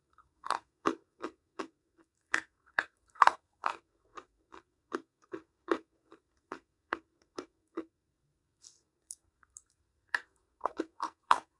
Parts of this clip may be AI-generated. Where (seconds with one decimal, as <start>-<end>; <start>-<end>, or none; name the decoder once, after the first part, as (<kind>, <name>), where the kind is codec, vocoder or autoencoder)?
0.0-11.6 (codec, SNAC)

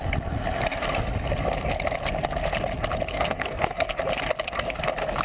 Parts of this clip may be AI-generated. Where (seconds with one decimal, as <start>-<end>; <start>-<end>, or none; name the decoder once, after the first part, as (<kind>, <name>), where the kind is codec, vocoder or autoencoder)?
3.1-3.9 (codec, SNAC)

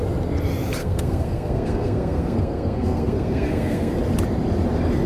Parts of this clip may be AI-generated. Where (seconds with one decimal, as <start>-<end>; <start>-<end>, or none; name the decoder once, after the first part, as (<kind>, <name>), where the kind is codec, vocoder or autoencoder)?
0.8-3.9 (codec, SNAC)

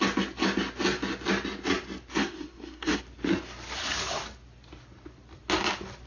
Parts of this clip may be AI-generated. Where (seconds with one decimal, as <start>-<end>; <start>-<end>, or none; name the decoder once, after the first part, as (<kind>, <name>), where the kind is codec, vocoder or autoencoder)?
2.1-3.0 (codec, SNAC)

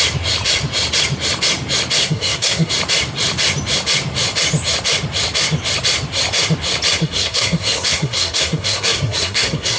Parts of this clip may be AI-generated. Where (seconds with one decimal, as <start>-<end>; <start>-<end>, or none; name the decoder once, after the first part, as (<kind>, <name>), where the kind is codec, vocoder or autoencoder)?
2.0-2.7 (codec, SNAC); 7.0-9.8